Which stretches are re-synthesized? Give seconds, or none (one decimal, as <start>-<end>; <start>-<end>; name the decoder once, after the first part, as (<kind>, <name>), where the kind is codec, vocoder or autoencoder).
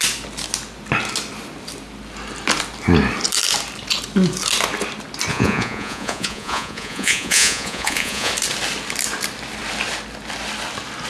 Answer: 5.3-8.3 (vocoder, Vocos)